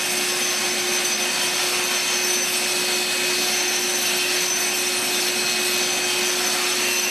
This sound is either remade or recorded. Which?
recorded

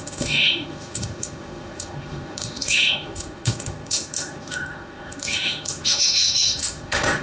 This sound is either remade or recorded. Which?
remade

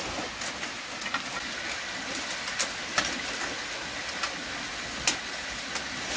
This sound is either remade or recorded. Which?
recorded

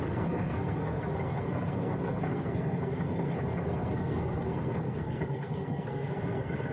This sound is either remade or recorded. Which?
remade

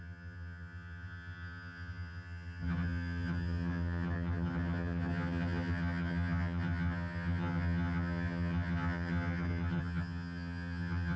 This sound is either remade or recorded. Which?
remade